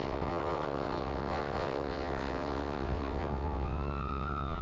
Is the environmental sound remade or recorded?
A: remade